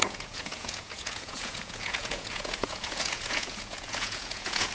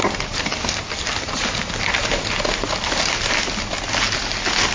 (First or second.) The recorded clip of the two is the second